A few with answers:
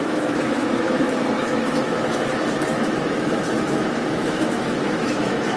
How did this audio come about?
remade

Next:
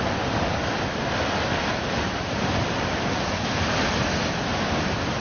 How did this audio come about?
recorded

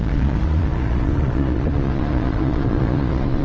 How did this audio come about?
remade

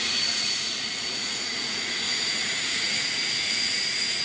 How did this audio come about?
remade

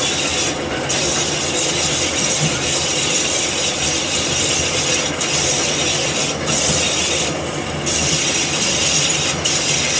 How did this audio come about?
recorded